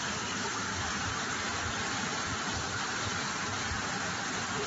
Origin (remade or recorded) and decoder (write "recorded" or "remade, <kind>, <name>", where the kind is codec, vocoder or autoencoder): recorded